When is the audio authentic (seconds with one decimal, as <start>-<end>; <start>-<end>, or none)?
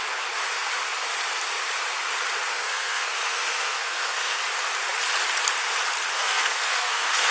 0.0-2.5; 4.4-6.1